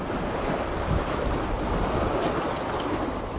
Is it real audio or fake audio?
real